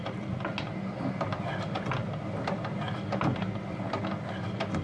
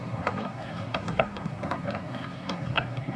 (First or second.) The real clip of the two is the first